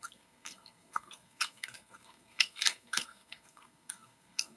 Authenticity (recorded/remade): remade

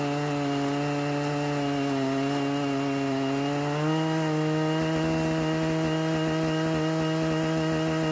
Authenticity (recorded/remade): recorded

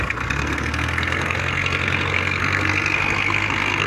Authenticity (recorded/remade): remade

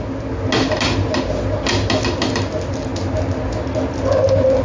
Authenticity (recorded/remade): recorded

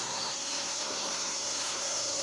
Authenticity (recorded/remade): remade